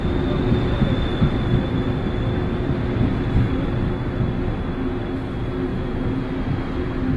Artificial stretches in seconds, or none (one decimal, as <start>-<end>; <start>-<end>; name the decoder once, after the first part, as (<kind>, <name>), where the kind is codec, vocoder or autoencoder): 5.7-6.3 (vocoder, Vocos)